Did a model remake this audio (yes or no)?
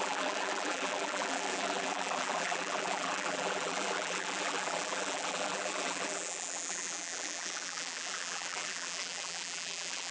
yes